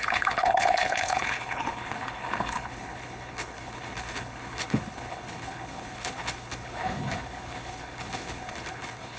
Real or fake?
fake